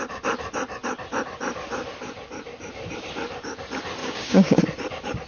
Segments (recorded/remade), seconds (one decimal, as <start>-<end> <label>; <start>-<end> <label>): 0.0-4.0 recorded; 4.0-4.6 remade; 4.6-5.3 recorded